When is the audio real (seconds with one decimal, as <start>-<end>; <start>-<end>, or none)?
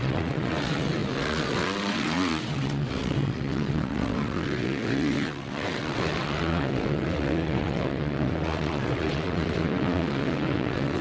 none